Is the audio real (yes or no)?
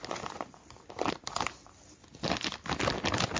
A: yes